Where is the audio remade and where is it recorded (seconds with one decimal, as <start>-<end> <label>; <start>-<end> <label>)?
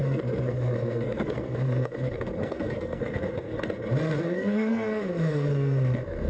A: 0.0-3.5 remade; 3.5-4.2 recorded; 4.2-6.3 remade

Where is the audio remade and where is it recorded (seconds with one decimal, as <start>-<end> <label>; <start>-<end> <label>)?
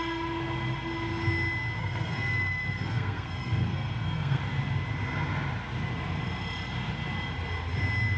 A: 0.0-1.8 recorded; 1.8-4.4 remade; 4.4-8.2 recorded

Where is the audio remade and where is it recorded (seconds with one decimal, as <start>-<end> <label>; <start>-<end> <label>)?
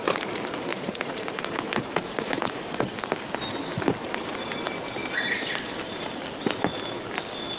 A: 0.0-0.7 recorded; 0.7-3.0 remade; 3.0-7.6 recorded